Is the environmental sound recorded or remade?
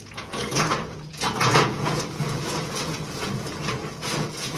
remade